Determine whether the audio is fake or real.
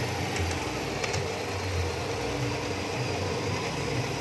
real